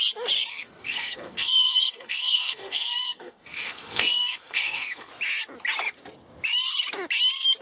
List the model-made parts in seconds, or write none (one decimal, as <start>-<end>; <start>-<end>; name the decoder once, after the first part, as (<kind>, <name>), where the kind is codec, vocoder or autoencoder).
0.5-5.1 (codec, SNAC)